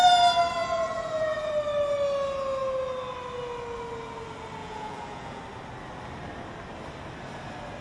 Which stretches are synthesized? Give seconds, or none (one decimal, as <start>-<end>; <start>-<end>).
0.6-1.5; 4.6-5.4